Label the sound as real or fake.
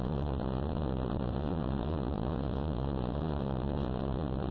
fake